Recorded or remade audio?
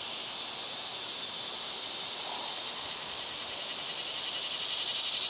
recorded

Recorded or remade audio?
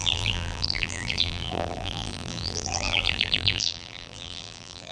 remade